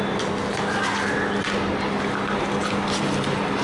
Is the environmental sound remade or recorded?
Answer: recorded